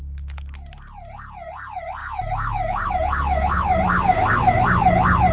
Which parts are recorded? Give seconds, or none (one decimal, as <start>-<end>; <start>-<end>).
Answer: 0.0-2.0; 2.9-5.3